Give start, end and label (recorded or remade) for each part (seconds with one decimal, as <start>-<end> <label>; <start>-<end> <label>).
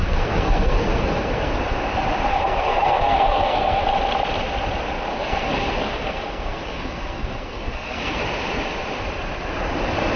0.0-1.5 remade; 1.5-2.3 recorded; 2.3-3.8 remade; 3.8-5.1 recorded; 5.1-8.2 remade; 8.2-10.2 recorded